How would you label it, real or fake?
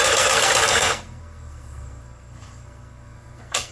fake